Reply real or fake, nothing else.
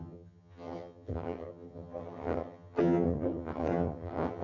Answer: fake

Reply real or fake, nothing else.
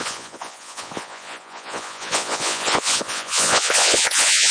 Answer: fake